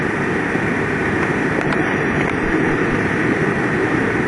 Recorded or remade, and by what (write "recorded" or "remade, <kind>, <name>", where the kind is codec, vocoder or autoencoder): remade, vocoder, BigVGAN v2